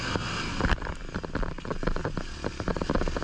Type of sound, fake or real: real